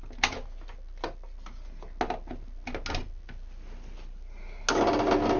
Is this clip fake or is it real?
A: real